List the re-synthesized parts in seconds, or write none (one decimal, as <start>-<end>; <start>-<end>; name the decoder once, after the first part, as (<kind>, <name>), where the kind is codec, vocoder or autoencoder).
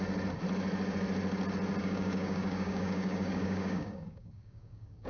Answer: 1.8-5.1 (codec, DAC)